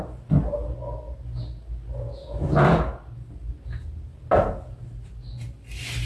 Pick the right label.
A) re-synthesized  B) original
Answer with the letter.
B